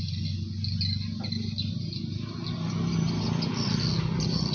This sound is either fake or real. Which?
real